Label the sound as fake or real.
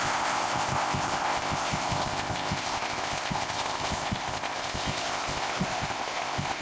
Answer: fake